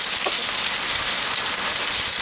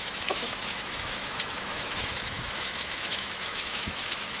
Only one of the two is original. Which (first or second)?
first